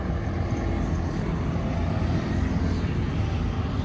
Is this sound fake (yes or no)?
no